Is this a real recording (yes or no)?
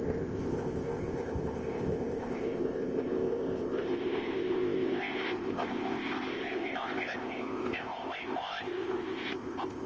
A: no